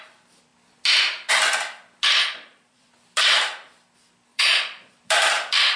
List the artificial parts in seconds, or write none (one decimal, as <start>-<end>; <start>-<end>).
2.2-2.9; 4.3-4.9